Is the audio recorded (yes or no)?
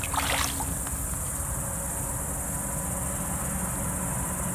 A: yes